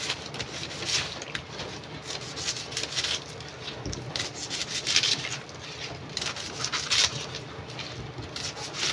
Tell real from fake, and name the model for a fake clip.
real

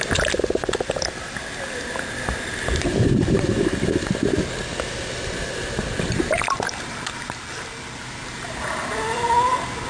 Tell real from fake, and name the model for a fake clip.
real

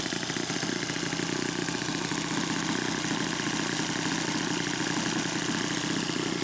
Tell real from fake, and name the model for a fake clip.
real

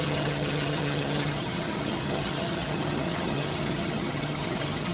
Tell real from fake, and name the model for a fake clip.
fake, vocoder, HiFi-GAN